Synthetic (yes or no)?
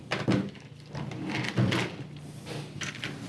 no